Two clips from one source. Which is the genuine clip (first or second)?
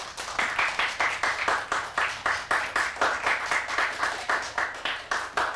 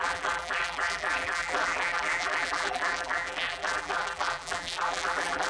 first